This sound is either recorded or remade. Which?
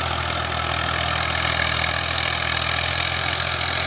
recorded